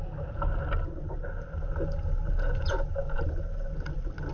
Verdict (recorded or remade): recorded